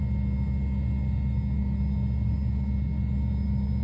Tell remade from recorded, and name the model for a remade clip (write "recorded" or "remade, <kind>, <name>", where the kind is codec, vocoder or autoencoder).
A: recorded